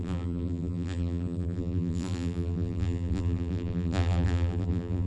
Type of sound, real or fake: fake